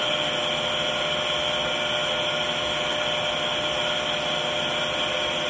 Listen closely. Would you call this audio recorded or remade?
recorded